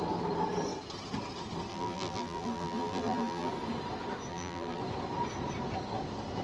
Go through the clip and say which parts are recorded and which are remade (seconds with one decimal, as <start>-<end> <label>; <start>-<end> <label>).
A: 0.0-1.7 recorded; 1.7-3.5 remade; 3.5-4.3 recorded; 4.3-4.8 remade; 4.8-6.4 recorded